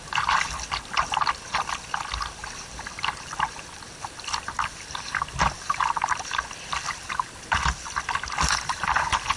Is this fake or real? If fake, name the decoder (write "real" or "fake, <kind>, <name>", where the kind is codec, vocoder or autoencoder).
real